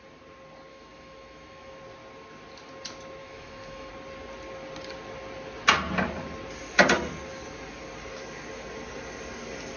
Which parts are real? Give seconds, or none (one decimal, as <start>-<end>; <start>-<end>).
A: 0.0-0.7; 1.8-3.2; 3.9-9.8